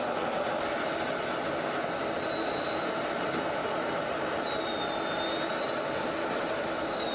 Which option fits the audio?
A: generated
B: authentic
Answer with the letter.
B